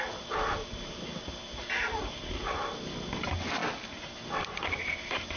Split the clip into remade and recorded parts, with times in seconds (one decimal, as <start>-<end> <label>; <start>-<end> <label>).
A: 0.0-0.6 recorded; 0.6-2.7 remade; 2.7-5.4 recorded